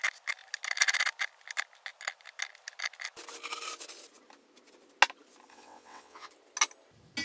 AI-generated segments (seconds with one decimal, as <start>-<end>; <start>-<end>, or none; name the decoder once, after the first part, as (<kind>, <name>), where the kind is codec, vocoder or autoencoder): 5.5-6.3 (vocoder, WaveNeXt)